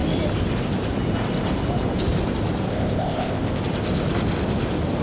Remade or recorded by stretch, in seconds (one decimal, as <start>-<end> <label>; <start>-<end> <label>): 0.0-2.7 recorded; 2.7-3.6 remade; 3.6-5.0 recorded